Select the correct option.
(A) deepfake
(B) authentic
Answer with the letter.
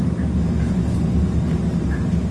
B